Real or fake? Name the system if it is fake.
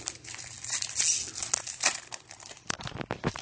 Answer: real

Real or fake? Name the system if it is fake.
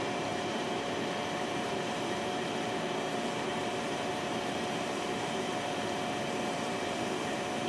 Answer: fake, vocoder, BigVGAN v2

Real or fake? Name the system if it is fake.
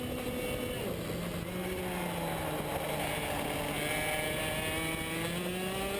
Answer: real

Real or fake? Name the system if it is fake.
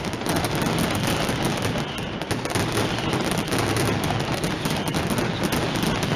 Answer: real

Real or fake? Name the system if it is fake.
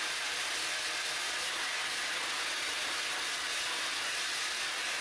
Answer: real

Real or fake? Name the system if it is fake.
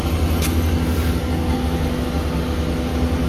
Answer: real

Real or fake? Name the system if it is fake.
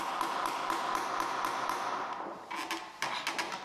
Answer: real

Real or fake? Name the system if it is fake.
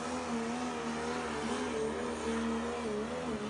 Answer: real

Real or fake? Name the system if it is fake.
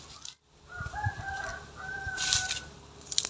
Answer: fake, vocoder, BigVGAN v2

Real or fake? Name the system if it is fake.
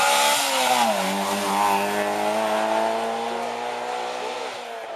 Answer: real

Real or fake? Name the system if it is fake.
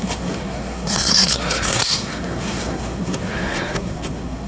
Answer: fake, codec, SNAC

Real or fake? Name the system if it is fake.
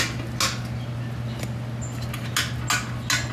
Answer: real